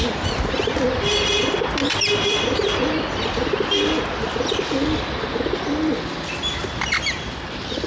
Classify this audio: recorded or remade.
recorded